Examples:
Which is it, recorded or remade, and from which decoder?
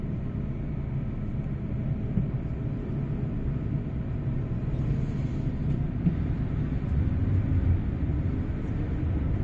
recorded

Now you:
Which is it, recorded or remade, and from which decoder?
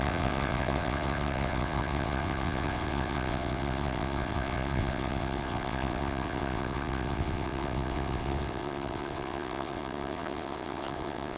remade, vocoder, WaveNeXt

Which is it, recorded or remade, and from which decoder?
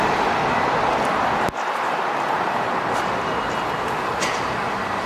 recorded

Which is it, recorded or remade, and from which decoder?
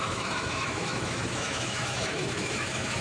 remade, autoencoder, DAC-VAE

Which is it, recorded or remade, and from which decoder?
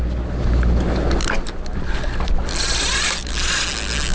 recorded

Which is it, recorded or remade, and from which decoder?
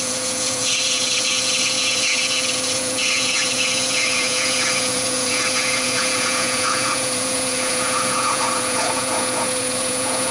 remade, vocoder, Vocos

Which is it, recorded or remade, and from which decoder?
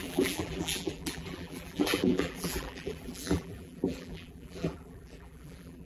remade, vocoder, BigVGAN v2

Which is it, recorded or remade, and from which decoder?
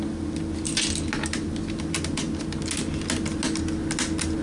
recorded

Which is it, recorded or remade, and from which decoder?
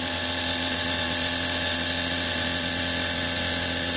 remade, vocoder, WaveNeXt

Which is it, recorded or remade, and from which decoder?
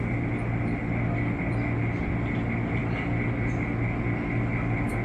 recorded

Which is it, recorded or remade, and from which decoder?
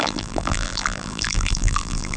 remade, vocoder, BigVGAN v2